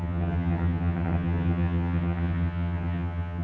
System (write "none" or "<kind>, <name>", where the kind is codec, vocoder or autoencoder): vocoder, HiFi-GAN